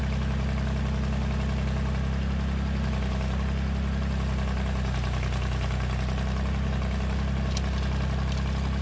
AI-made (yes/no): no